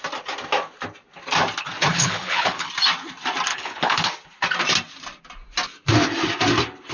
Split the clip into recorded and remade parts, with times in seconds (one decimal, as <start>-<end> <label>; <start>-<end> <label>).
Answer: 0.0-1.9 recorded; 1.9-2.7 remade; 2.7-3.5 recorded; 3.5-4.1 remade; 4.1-6.9 recorded